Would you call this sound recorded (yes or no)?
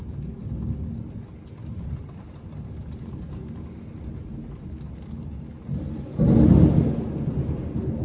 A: yes